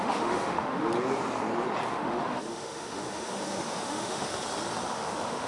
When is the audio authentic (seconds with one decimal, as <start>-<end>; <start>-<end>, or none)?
0.9-1.9; 4.3-4.9